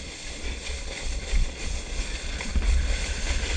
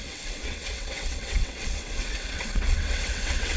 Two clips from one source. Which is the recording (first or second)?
first